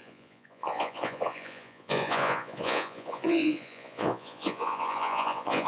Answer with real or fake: fake